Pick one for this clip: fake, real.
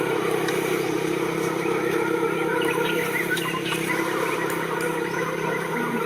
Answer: fake